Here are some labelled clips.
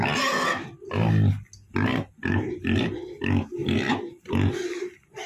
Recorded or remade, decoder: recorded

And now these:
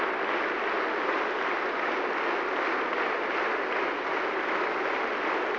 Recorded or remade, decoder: recorded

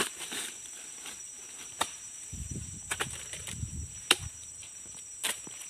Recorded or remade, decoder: remade, vocoder, BigVGAN v2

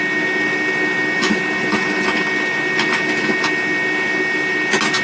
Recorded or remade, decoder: recorded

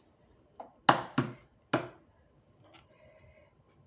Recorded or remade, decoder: recorded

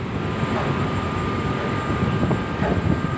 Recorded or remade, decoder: recorded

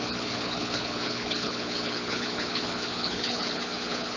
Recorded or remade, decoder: remade, codec, HILCodec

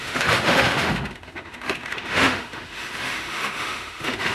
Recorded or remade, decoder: remade, autoencoder, DAC-VAE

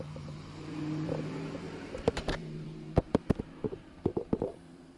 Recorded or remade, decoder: remade, vocoder, BigVGAN v2